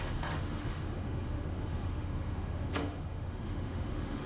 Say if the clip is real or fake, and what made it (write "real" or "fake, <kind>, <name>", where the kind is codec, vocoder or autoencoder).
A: fake, autoencoder, DAC-VAE